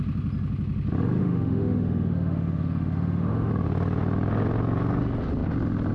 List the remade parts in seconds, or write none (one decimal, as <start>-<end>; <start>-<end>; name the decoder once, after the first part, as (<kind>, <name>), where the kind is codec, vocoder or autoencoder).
1.2-3.5 (autoencoder, DAC-VAE)